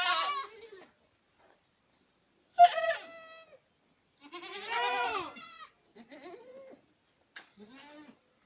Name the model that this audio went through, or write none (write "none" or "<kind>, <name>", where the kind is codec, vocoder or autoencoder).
none